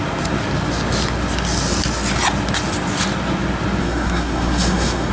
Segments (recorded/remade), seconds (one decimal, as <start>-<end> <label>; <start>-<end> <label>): 0.0-3.8 recorded; 3.8-5.1 remade